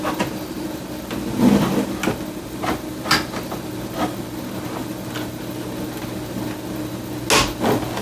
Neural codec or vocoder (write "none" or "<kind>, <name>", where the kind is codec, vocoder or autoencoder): none